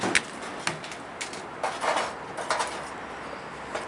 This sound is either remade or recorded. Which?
recorded